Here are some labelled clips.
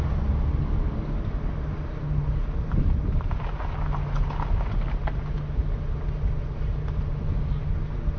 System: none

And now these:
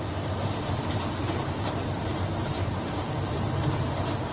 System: vocoder, BigVGAN v2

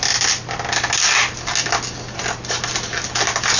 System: none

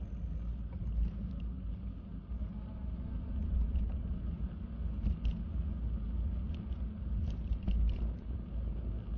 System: none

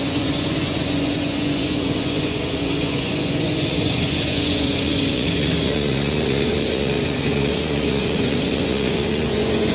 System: vocoder, Vocos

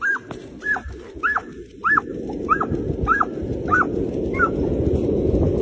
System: none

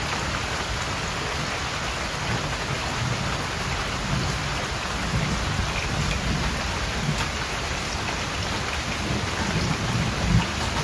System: none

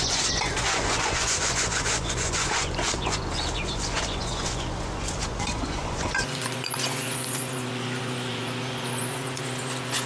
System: vocoder, Vocos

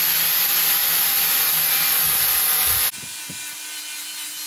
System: none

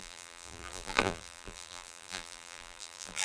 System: vocoder, BigVGAN v2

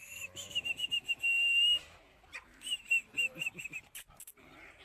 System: vocoder, BigVGAN v2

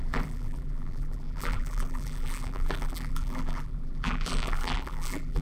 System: vocoder, BigVGAN v2